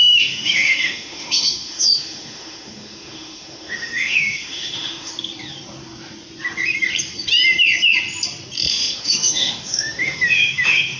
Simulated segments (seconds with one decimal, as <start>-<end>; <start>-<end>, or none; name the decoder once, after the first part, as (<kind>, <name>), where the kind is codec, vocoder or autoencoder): 0.0-5.1 (autoencoder, DAC-VAE); 8.7-11.0